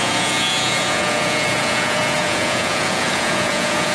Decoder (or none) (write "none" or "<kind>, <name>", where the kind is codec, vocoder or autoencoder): vocoder, Vocos